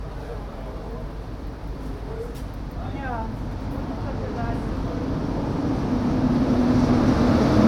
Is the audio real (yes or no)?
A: yes